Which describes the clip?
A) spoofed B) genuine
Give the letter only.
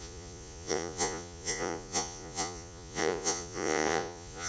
A